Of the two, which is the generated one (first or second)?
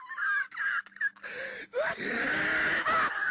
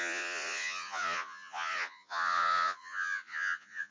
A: second